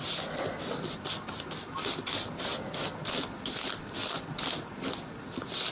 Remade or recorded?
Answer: recorded